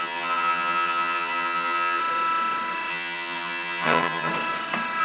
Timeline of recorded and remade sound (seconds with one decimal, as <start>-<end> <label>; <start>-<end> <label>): 0.0-2.0 remade; 2.0-2.9 recorded; 2.9-4.3 remade; 4.3-5.0 recorded